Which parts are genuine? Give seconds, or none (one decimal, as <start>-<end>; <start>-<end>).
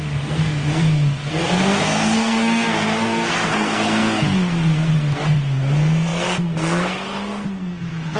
none